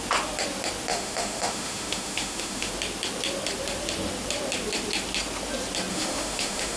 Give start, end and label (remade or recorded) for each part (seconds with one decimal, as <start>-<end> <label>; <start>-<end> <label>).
0.0-0.9 recorded; 0.9-2.7 remade; 2.7-5.9 recorded; 5.9-6.8 remade